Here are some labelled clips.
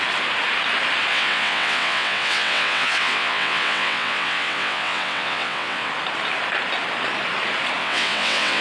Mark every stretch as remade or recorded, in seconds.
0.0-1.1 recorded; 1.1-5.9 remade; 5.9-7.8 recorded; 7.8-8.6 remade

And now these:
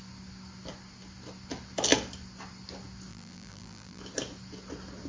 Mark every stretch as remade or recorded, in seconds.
0.0-3.1 recorded; 3.1-4.0 remade; 4.0-5.1 recorded

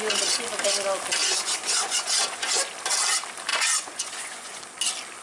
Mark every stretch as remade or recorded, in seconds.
0.0-1.2 recorded; 1.2-2.5 remade; 2.5-3.5 recorded; 3.5-4.6 remade; 4.6-5.2 recorded